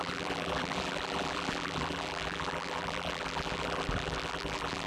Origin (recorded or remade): remade